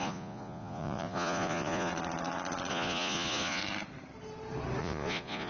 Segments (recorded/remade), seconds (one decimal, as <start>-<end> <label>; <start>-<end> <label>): 0.0-1.9 remade; 1.9-2.7 recorded; 2.7-3.6 remade; 3.6-4.8 recorded; 4.8-5.5 remade

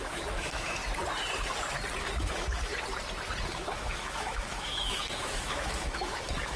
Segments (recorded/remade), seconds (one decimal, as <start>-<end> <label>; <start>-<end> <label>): 0.0-0.8 remade; 0.8-2.0 recorded; 2.0-2.7 remade; 2.7-3.5 recorded; 3.5-6.6 remade